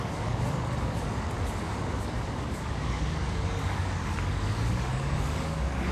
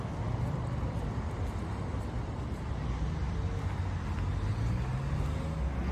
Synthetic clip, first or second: first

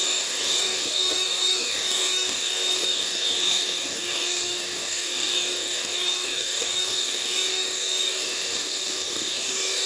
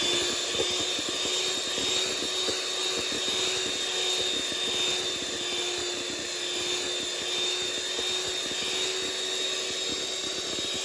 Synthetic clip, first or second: first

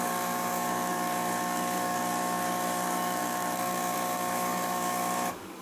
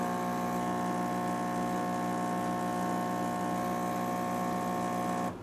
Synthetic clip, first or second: first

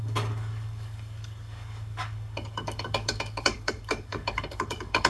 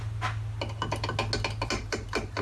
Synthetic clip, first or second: first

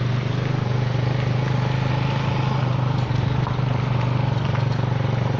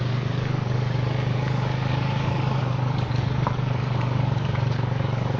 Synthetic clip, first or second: second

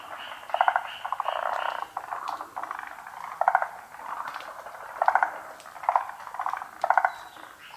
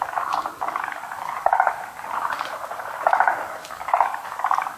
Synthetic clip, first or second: second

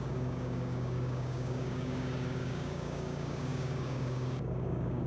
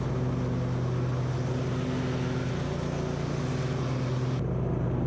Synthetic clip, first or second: first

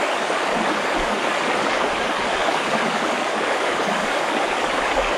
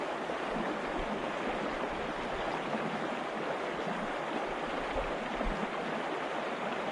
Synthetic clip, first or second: first